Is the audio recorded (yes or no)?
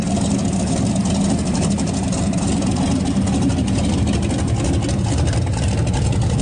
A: no